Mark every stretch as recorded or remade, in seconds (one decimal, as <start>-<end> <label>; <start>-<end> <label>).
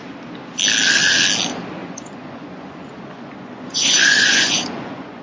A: 0.0-1.8 recorded; 1.8-5.2 remade